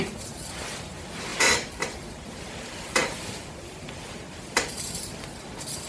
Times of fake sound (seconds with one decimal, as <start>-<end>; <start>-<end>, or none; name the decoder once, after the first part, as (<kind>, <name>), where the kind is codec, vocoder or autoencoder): 1.3-4.8 (vocoder, BigVGAN v2)

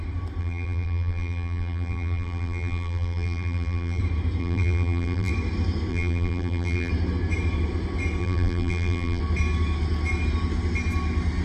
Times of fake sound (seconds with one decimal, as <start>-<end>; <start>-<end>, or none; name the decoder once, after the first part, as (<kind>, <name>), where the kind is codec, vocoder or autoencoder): 0.4-4.0 (vocoder, BigVGAN v2); 4.4-5.3; 5.9-6.9; 8.2-9.2

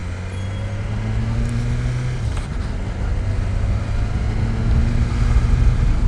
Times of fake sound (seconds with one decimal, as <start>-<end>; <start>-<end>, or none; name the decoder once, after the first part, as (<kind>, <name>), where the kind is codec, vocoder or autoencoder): none

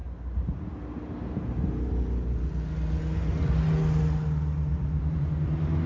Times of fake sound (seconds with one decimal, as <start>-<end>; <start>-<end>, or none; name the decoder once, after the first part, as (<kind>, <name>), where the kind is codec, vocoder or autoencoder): 4.7-5.3 (vocoder, BigVGAN v2)

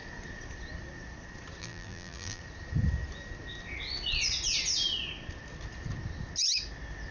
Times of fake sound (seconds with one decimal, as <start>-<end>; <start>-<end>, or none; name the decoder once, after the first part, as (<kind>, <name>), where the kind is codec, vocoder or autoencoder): 1.6-2.4 (vocoder, BigVGAN v2)

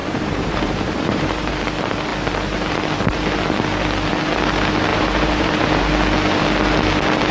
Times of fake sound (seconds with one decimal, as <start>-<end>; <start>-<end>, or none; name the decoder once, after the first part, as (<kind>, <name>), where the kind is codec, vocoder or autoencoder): 0.0-1.5 (vocoder, BigVGAN v2); 4.9-5.8

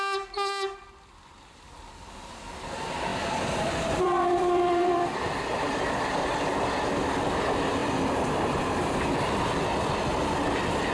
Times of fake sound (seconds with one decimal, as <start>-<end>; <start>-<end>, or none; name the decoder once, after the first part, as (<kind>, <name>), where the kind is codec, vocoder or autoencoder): 3.1-6.7 (vocoder, BigVGAN v2)